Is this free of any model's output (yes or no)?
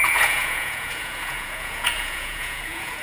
no